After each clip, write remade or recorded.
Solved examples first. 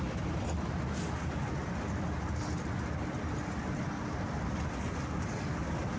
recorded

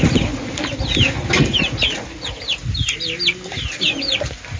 recorded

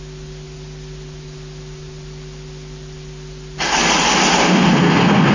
recorded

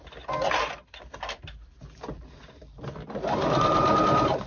recorded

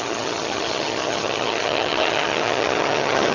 remade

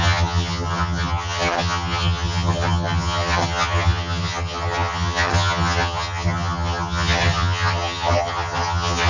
remade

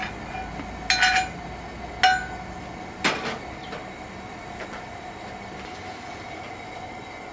recorded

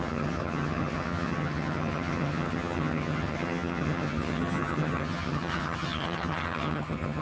remade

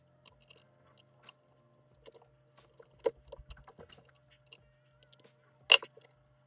recorded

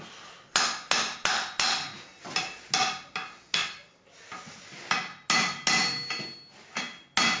recorded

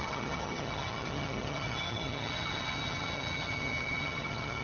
remade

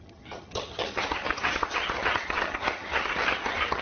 remade